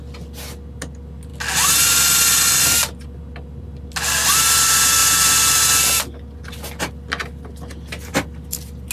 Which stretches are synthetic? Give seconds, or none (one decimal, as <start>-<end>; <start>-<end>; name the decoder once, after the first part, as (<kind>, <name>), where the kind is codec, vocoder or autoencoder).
none